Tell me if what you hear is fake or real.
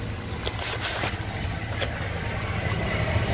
real